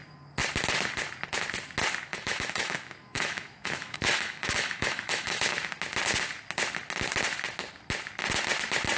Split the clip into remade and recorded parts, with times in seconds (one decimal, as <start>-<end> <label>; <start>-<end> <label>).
0.0-2.1 recorded; 2.1-5.4 remade; 5.4-9.0 recorded